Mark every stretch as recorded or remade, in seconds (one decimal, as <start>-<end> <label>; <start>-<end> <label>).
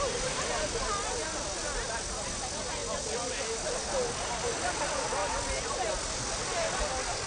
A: 0.0-7.3 recorded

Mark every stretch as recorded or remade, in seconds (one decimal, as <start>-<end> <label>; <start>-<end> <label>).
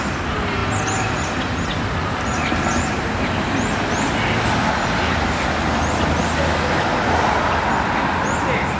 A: 0.0-8.8 recorded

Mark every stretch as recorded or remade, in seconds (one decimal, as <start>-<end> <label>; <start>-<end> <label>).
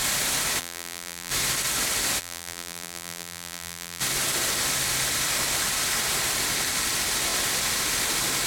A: 0.0-0.6 recorded; 0.6-1.3 remade; 1.3-2.2 recorded; 2.2-4.0 remade; 4.0-8.5 recorded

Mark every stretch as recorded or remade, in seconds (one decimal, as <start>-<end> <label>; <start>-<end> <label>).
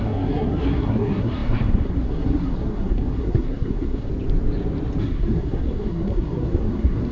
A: 0.0-4.1 remade; 4.1-5.0 recorded; 5.0-7.1 remade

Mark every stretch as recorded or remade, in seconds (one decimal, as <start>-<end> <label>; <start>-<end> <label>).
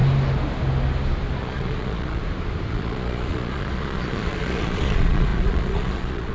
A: 0.0-1.4 recorded; 1.4-2.2 remade; 2.2-2.7 recorded; 2.7-6.3 remade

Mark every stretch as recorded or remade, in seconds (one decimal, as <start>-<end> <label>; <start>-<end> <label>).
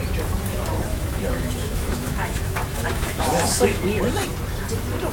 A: 0.0-0.9 recorded; 0.9-4.0 remade; 4.0-5.1 recorded